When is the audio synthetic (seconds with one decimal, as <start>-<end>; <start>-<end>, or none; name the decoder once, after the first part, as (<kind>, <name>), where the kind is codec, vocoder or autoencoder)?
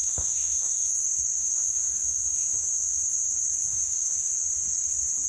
0.0-0.9 (autoencoder, DAC-VAE); 1.4-3.0; 3.7-4.3